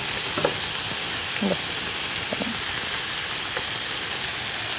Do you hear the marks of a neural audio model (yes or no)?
no